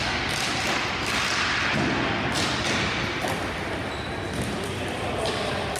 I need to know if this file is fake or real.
real